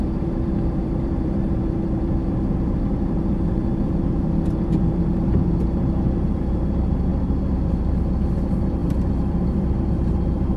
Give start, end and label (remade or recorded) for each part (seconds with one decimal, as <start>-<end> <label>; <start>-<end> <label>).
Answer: 0.0-10.6 remade